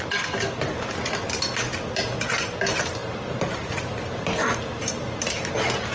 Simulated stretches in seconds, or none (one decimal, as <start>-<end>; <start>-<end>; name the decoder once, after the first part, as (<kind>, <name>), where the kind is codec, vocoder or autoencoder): none